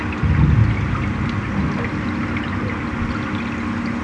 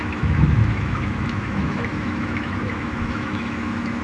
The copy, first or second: second